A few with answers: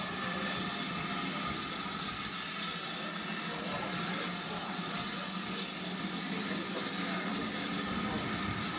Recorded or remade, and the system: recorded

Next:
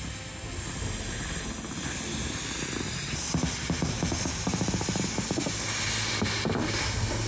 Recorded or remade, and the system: recorded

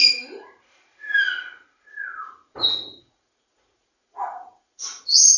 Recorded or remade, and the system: remade, vocoder, Vocos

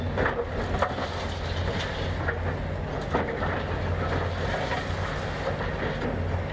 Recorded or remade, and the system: recorded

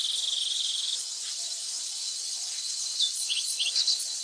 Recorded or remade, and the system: recorded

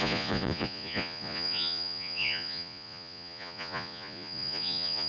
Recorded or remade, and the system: remade, vocoder, Vocos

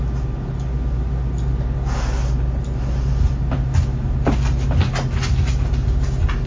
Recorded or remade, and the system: recorded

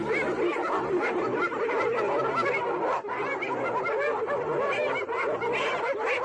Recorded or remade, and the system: recorded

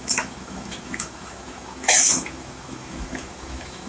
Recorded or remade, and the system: remade, autoencoder, DAC-VAE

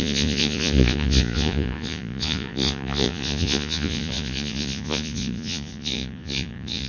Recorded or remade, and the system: remade, vocoder, Vocos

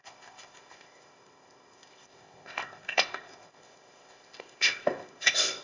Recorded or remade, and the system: remade, codec, ZipCodec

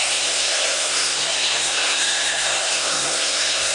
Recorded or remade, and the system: remade, codec, SNAC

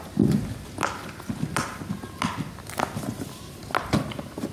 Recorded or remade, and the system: recorded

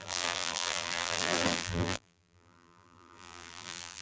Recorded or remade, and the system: remade, vocoder, BigVGAN v2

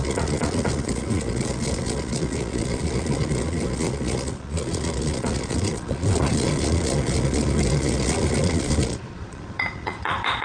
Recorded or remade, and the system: remade, vocoder, Vocos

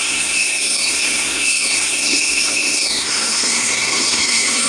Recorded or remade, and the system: remade, codec, SNAC